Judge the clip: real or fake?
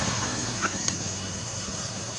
fake